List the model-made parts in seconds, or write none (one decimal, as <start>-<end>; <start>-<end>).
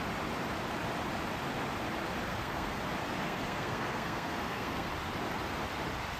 2.3-2.8; 3.2-4.9